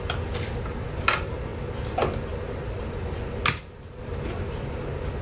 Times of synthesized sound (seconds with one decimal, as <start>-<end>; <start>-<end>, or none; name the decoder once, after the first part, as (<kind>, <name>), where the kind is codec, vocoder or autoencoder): none